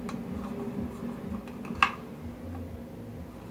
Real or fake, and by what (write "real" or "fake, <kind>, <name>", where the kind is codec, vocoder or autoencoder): real